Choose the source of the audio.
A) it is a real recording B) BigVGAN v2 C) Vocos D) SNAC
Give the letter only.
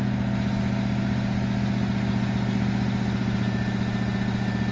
A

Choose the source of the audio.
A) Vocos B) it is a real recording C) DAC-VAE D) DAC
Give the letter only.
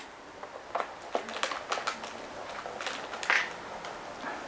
B